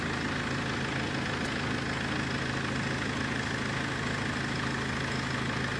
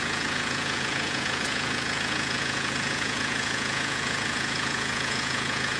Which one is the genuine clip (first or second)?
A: first